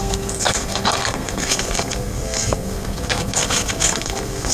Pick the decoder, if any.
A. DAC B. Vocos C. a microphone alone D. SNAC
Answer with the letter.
D